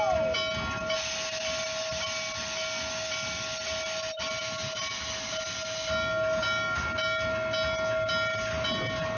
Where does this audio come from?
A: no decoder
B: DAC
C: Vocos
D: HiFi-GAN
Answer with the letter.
A